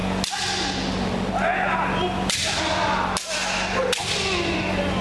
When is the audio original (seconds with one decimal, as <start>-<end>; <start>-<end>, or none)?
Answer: 0.0-5.0